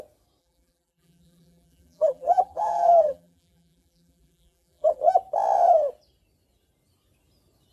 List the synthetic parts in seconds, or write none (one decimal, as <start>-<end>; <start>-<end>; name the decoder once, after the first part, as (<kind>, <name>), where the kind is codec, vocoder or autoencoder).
0.4-5.0 (vocoder, BigVGAN v2)